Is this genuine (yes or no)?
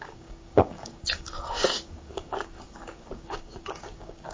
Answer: no